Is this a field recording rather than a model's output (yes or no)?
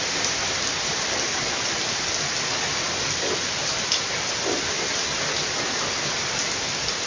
yes